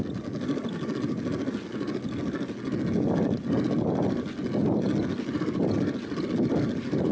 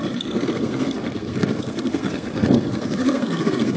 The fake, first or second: second